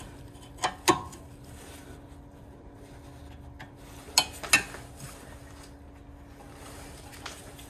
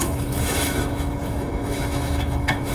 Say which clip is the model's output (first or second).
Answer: second